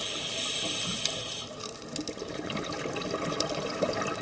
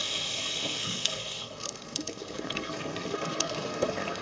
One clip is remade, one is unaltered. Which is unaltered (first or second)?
first